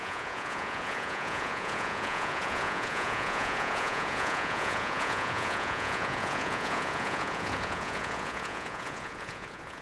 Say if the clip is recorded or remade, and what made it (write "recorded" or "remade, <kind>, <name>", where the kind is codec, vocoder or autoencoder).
remade, vocoder, Vocos